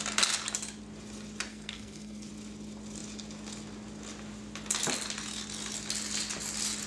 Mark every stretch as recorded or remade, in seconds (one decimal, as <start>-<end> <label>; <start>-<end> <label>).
0.0-1.5 recorded; 1.5-2.3 remade; 2.3-6.9 recorded